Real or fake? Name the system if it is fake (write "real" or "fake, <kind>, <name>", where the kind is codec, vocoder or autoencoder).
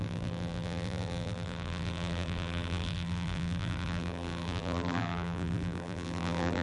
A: fake, vocoder, BigVGAN v2